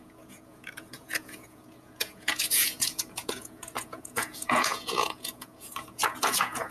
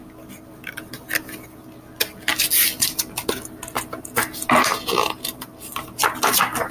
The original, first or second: second